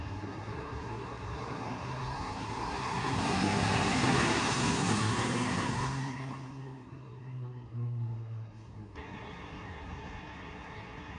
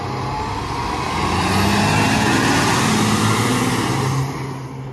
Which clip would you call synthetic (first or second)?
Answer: first